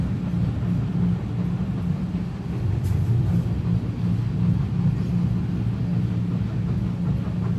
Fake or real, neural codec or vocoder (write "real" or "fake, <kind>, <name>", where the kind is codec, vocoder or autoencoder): real